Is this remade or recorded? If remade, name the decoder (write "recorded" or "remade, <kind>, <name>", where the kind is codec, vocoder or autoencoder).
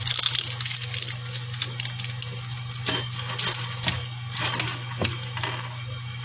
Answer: recorded